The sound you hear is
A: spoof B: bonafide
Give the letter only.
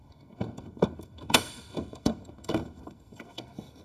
A